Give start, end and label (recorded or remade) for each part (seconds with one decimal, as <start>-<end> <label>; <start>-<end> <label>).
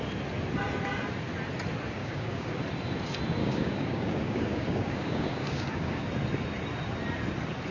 0.0-2.0 recorded; 2.0-2.6 remade; 2.6-3.4 recorded; 3.4-6.1 remade; 6.1-7.7 recorded